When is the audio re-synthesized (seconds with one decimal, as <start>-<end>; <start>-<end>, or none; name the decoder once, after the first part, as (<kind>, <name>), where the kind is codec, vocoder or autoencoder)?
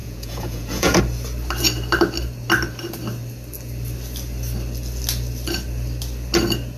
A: 0.0-1.0 (vocoder, Vocos)